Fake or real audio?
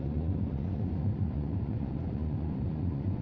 fake